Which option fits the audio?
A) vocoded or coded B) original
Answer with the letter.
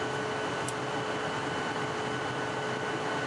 B